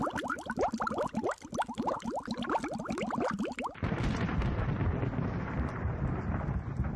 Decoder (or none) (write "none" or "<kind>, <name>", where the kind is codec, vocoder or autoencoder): none